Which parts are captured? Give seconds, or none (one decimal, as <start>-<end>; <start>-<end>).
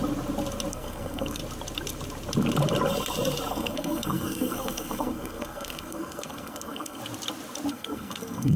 0.0-0.7; 1.4-3.5; 7.0-7.7